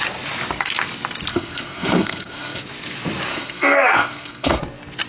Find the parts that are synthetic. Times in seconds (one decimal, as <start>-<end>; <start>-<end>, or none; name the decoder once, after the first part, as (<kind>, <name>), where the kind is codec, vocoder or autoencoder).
1.3-2.6 (codec, SNAC); 3.3-4.6